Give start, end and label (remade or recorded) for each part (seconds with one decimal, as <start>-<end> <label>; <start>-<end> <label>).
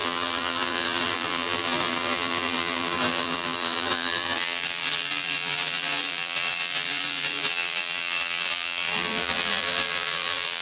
0.0-10.6 remade